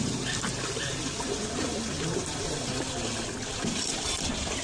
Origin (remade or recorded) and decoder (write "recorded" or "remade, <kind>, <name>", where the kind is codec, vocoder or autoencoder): recorded